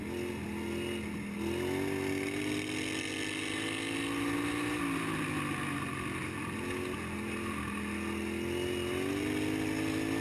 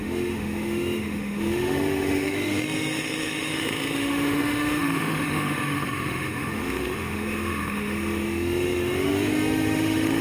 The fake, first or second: second